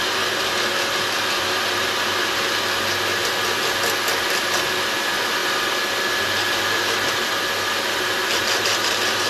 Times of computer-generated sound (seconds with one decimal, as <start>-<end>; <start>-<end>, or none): none